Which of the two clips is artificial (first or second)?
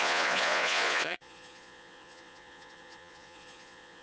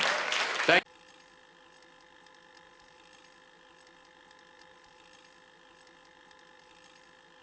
first